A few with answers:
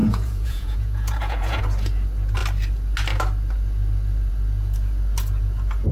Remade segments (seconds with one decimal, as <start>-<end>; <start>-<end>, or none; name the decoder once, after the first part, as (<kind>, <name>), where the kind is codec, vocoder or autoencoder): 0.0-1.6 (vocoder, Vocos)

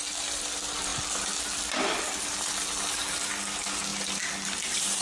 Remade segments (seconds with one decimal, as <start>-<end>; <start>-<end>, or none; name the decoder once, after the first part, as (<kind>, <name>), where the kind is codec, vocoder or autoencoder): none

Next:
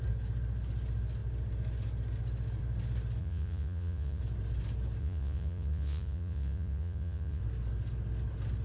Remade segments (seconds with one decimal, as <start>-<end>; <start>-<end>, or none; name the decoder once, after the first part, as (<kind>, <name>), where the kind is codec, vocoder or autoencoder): 3.2-4.2 (vocoder, Vocos); 5.0-7.4

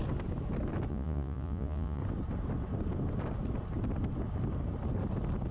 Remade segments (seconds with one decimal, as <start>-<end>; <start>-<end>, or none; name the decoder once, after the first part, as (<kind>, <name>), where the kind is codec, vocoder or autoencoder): 0.9-2.0 (vocoder, Vocos)

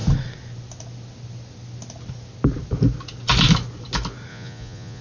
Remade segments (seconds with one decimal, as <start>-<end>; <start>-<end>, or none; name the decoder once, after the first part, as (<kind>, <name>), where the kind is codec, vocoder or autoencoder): 4.3-5.0 (vocoder, Vocos)

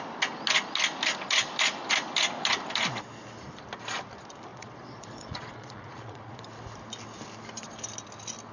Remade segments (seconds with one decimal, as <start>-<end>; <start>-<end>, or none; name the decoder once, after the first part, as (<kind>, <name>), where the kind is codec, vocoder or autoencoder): 4.5-6.4 (vocoder, Vocos)

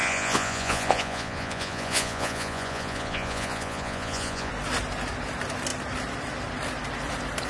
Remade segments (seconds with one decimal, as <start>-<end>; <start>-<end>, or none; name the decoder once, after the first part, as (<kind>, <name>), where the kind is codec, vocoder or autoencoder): 0.0-4.5 (vocoder, Vocos)